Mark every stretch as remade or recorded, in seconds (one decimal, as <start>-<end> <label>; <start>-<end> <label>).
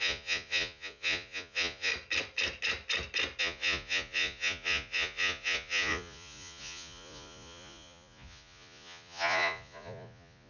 0.0-1.9 remade; 1.9-3.4 recorded; 3.4-10.5 remade